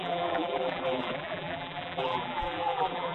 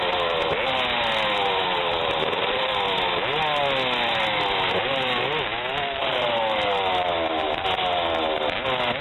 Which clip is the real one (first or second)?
second